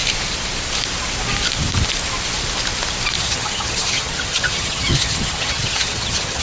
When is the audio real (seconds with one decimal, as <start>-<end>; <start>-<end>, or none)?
0.0-3.2